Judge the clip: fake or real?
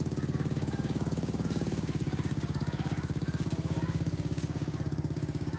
fake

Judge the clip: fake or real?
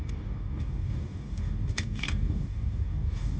fake